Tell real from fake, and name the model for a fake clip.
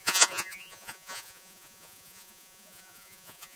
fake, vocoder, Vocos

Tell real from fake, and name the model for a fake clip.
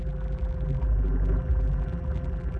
fake, vocoder, BigVGAN v2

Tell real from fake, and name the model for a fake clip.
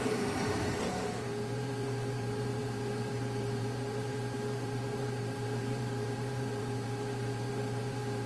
fake, vocoder, BigVGAN v2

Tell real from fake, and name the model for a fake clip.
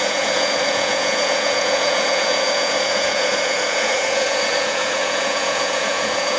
fake, vocoder, Vocos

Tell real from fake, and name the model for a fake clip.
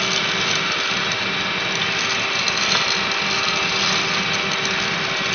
real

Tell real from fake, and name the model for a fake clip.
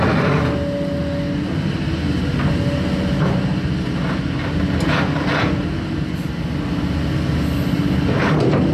real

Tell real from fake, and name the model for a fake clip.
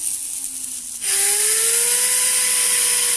real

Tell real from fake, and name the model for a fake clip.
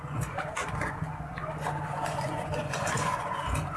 fake, vocoder, Vocos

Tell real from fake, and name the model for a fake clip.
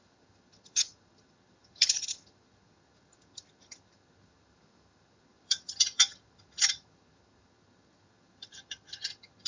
fake, vocoder, HiFi-GAN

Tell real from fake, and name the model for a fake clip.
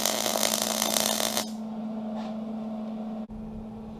real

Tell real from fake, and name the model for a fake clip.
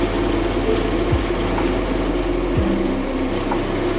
real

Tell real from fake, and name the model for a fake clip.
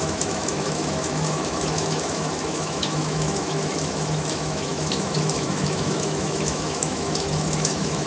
fake, autoencoder, DAC-VAE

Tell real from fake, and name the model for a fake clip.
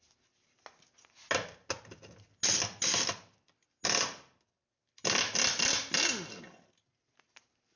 real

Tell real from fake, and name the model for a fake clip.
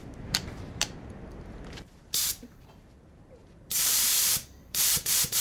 fake, vocoder, BigVGAN v2